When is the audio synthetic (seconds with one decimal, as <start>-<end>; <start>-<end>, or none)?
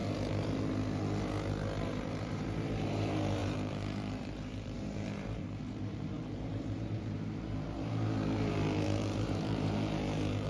1.8-10.5